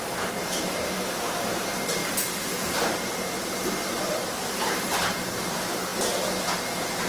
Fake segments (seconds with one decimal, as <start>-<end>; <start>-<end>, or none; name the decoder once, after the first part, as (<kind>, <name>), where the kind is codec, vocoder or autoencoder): 0.0-7.1 (vocoder, BigVGAN v2)